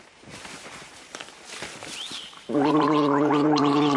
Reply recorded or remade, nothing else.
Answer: remade